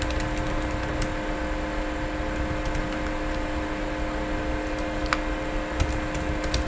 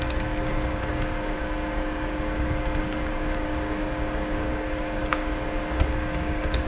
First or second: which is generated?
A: second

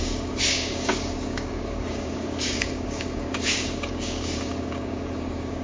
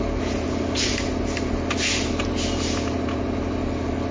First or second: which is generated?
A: first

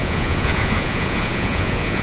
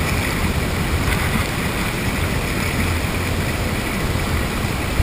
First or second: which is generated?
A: first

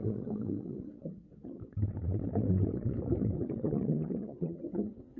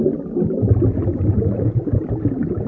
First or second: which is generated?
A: first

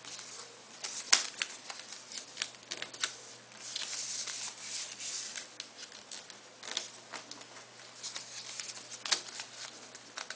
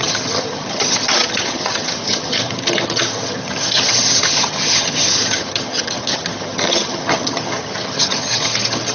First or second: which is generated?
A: second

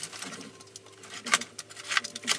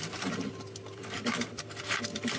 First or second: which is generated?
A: second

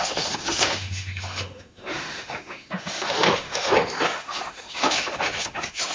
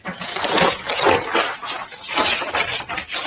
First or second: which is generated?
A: first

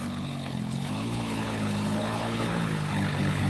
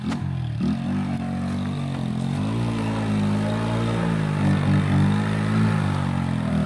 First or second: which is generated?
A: first